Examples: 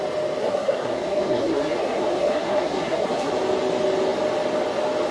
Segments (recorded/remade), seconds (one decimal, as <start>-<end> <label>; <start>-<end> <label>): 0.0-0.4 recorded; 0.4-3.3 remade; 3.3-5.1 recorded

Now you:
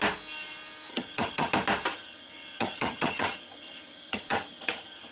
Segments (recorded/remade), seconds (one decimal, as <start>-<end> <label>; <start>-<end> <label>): 0.0-0.9 recorded; 0.9-1.5 remade; 1.5-1.9 recorded; 1.9-5.1 remade

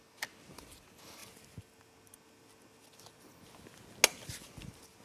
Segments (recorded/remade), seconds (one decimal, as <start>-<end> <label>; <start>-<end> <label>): 0.0-5.0 recorded

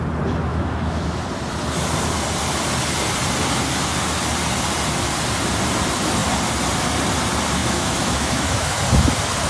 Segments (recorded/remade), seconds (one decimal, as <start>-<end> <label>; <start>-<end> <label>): 0.0-0.5 recorded; 0.5-1.2 remade; 1.2-7.6 recorded; 7.6-8.8 remade; 8.8-9.5 recorded

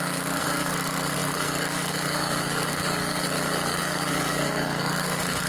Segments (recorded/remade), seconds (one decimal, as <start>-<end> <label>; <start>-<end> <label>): 0.0-5.5 remade

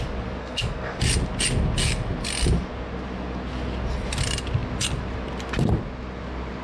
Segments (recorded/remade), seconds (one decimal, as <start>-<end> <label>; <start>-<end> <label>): 0.0-0.4 recorded; 0.4-1.0 remade; 1.0-6.6 recorded

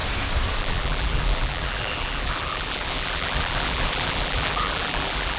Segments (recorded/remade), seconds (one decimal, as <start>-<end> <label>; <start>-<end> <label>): 0.0-0.6 recorded; 0.6-5.4 remade

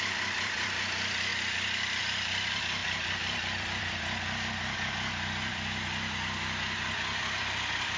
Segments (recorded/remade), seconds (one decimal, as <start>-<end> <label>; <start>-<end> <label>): 0.0-8.0 remade